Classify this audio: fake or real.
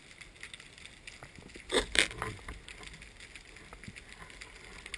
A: real